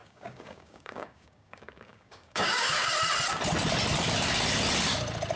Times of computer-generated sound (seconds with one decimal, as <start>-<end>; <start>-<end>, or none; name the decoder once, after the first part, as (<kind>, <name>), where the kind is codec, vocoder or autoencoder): 0.0-2.9 (codec, DAC)